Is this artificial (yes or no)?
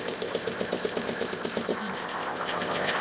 yes